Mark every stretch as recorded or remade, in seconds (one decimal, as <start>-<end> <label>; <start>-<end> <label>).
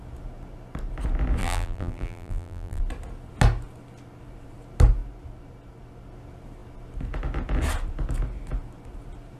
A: 0.0-1.4 recorded; 1.4-2.8 remade; 2.8-9.4 recorded